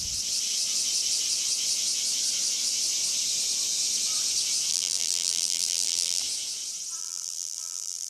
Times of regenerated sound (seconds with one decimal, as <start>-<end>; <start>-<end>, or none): 4.7-6.2; 7.0-8.1